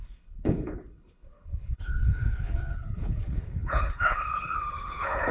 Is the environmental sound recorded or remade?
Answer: remade